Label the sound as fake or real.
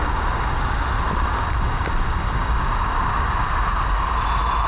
real